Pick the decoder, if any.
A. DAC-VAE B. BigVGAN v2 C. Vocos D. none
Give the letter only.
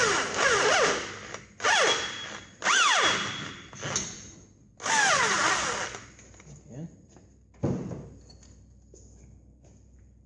D